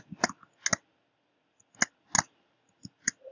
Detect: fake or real real